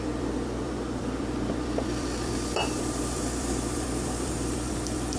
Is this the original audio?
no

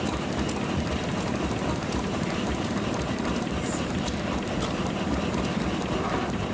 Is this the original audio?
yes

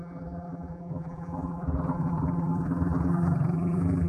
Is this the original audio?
no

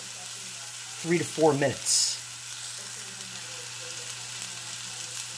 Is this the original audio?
yes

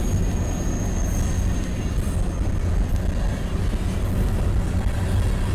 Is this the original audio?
yes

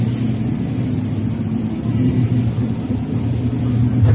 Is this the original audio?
yes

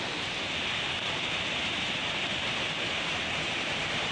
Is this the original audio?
no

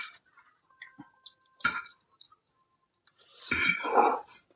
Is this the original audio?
yes